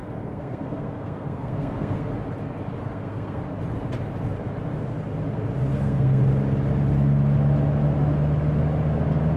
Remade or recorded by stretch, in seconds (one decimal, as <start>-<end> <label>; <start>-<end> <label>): 0.0-2.1 remade; 2.1-2.8 recorded; 2.8-3.4 remade; 3.4-5.7 recorded; 5.7-6.2 remade; 6.2-9.4 recorded